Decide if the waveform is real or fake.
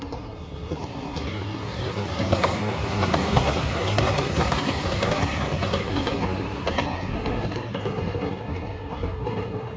fake